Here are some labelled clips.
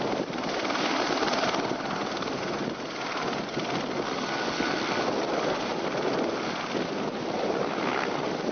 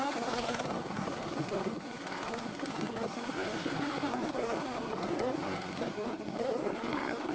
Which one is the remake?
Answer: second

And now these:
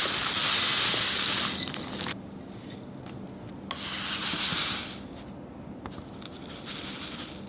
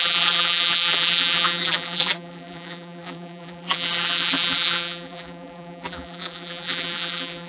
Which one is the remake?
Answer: second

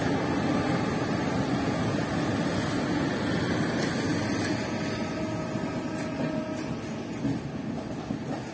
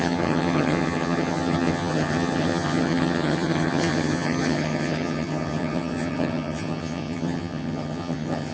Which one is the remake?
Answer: second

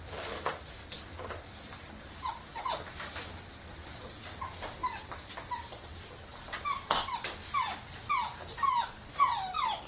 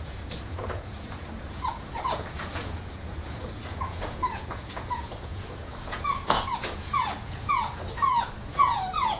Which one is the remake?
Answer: second